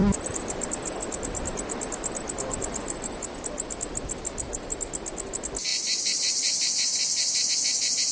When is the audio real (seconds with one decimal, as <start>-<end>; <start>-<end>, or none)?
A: 3.8-5.7; 7.5-8.1